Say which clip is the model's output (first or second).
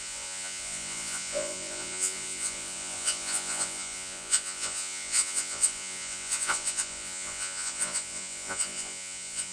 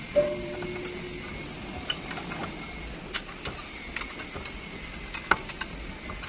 first